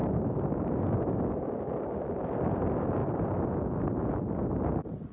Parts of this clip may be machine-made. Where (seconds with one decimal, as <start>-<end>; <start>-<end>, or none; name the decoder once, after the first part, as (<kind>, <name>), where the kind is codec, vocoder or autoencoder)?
0.0-2.1 (codec, DAC)